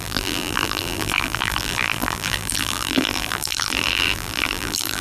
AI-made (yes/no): yes